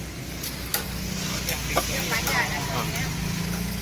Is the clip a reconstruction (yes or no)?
no